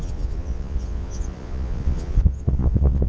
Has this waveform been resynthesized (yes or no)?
yes